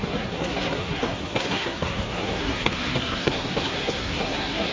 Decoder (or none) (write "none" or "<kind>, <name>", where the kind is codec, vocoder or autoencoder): codec, SNAC